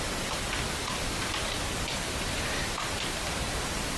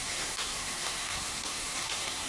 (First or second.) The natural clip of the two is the first